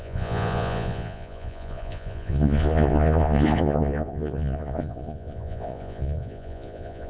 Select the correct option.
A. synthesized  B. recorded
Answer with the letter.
A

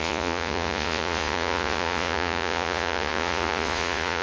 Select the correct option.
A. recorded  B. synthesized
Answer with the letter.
B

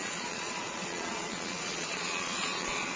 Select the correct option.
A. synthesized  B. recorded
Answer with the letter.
A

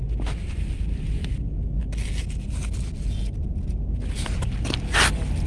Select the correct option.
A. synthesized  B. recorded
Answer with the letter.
B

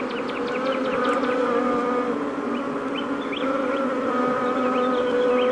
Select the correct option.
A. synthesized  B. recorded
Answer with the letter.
B